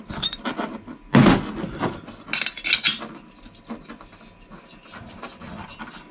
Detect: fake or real real